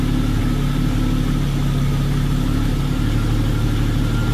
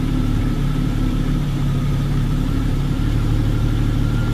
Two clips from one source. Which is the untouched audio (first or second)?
first